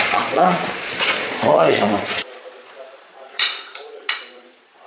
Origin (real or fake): fake